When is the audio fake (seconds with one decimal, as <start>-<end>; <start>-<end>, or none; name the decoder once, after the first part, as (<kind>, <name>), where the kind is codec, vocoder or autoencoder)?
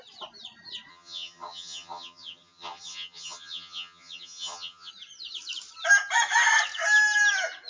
0.9-4.9 (vocoder, HiFi-GAN)